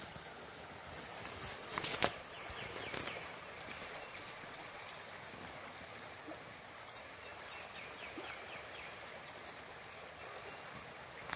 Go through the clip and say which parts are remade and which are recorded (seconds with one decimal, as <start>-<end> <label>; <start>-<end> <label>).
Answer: 0.0-1.6 recorded; 1.6-2.5 remade; 2.5-3.8 recorded; 3.8-4.8 remade; 4.8-11.4 recorded